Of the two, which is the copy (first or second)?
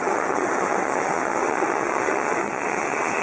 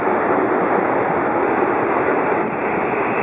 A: first